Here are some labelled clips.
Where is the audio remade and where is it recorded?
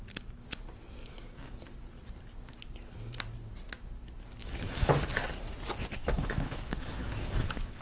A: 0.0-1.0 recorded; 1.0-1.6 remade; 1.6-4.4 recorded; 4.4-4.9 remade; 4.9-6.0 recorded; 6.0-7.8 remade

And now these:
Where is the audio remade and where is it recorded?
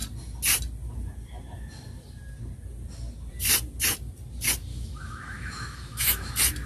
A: 0.0-4.7 recorded; 4.7-6.3 remade; 6.3-6.7 recorded